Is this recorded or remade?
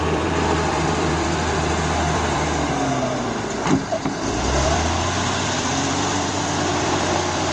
remade